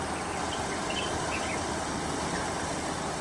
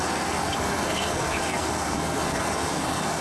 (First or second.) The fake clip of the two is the second